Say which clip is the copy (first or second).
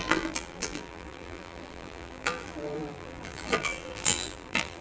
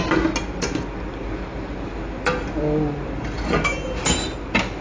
first